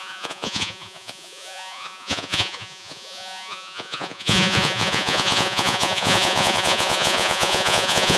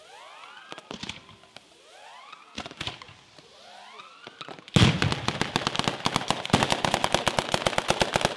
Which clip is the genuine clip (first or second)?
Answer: second